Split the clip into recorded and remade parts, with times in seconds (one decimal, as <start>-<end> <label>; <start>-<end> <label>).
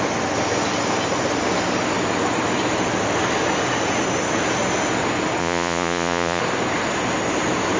0.0-5.4 recorded; 5.4-6.4 remade; 6.4-7.8 recorded